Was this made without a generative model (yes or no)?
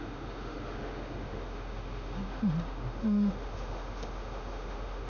no